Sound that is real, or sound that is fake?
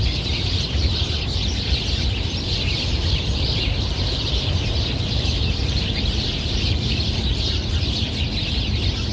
fake